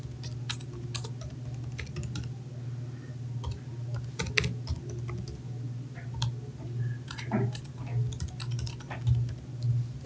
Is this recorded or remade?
recorded